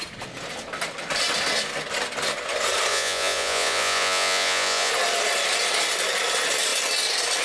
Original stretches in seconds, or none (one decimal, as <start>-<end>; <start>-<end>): 0.0-2.9; 4.9-7.4